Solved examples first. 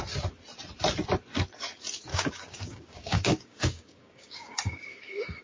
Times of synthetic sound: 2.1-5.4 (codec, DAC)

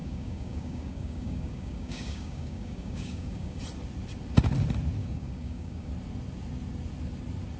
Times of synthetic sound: 0.0-3.6 (codec, DAC); 5.0-5.9

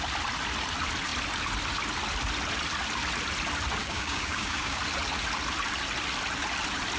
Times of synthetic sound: 3.8-4.8 (codec, DAC)